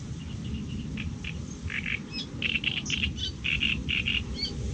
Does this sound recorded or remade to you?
recorded